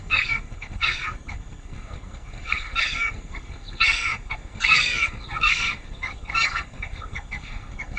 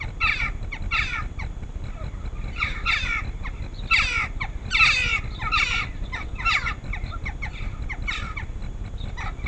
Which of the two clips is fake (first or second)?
first